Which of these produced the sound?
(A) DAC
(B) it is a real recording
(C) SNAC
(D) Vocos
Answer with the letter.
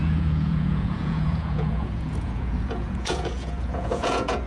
D